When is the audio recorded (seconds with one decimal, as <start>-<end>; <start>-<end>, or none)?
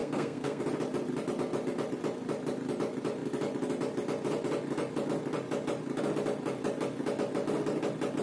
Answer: 0.6-8.2